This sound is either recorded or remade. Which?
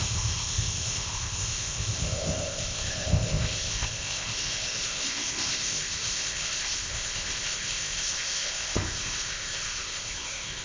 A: remade